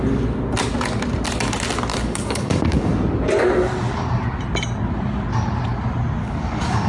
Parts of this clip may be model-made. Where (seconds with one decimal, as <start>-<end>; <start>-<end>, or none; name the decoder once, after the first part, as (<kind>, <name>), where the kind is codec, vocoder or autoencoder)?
1.9-2.9 (codec, DAC); 6.2-6.9

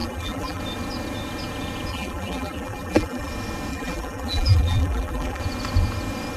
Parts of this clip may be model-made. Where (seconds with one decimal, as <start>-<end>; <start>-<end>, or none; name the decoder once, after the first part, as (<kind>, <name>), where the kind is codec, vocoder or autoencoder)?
0.0-0.6 (vocoder, BigVGAN v2); 1.9-3.3; 3.7-5.4

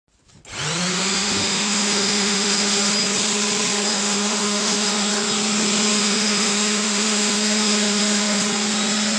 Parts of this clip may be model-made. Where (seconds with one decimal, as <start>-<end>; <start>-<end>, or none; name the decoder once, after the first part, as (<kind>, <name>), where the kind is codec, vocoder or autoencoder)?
0.9-2.9 (autoencoder, DAC-VAE); 3.9-5.1; 5.9-8.4

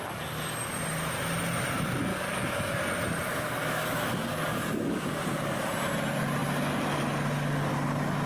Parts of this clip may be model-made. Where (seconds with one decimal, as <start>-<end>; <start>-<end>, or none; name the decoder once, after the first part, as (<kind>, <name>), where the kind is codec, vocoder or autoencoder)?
2.1-2.8 (codec, DAC); 3.3-5.7